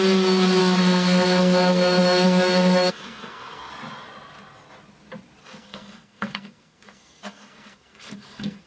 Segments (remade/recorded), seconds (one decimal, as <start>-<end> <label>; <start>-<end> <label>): 0.0-0.6 recorded; 0.6-3.7 remade; 3.7-5.4 recorded; 5.4-8.7 remade